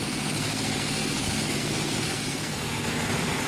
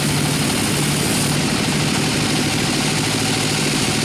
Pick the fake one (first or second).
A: first